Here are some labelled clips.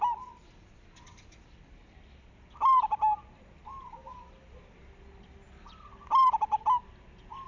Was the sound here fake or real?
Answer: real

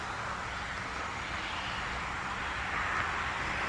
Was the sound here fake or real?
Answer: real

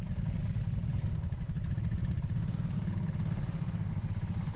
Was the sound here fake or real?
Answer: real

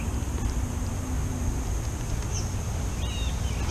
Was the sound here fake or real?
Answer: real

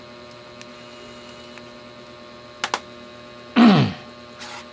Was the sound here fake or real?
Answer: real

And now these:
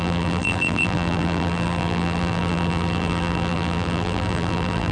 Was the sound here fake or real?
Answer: fake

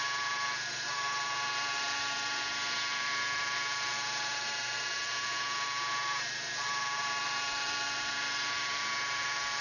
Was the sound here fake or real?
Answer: fake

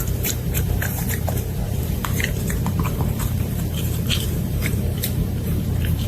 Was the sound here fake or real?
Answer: fake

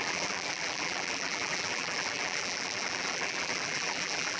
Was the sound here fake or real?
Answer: fake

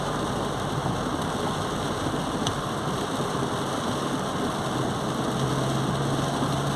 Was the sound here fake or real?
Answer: real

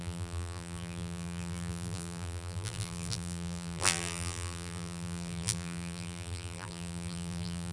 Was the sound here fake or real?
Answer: fake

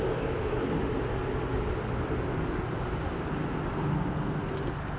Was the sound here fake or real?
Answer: real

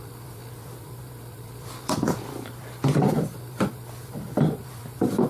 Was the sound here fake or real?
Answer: fake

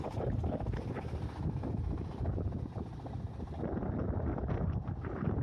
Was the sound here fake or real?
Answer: fake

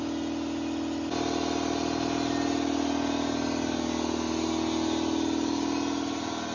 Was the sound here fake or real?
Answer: real